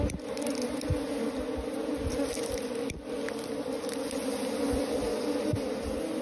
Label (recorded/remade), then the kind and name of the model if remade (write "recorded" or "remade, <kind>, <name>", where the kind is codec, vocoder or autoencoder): recorded